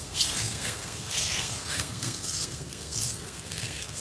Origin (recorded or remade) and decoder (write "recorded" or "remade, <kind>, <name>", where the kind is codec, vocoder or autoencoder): remade, codec, SNAC